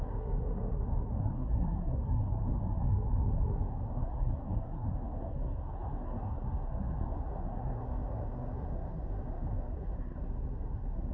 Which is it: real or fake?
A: fake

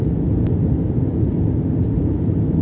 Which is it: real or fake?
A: real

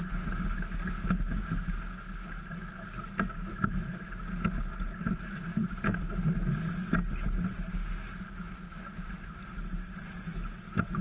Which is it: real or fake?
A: real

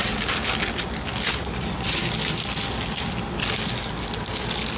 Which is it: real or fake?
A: real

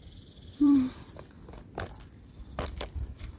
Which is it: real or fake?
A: fake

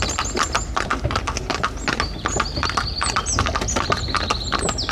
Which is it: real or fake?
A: real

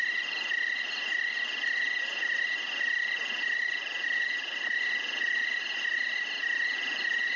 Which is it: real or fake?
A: real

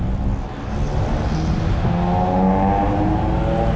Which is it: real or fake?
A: real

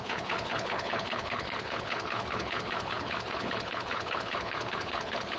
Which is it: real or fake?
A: fake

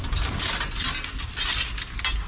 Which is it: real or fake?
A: real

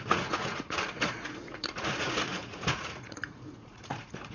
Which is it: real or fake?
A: fake